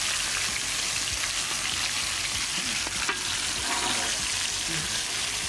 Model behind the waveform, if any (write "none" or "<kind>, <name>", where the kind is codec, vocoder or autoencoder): none